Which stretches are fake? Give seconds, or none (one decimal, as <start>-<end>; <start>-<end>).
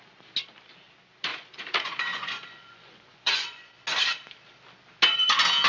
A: 1.3-3.7